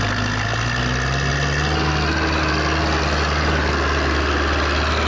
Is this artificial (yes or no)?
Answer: no